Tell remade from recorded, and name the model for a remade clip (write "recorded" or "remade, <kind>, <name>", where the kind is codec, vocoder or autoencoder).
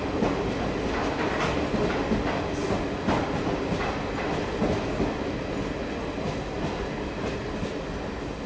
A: recorded